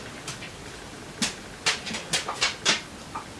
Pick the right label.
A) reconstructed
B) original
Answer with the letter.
B